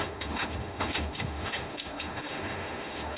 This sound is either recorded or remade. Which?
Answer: remade